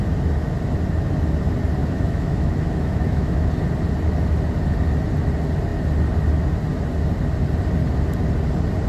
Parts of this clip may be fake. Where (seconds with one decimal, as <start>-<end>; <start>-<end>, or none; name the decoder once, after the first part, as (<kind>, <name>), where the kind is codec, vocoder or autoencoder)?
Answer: 1.8-3.5 (autoencoder, DAC-VAE)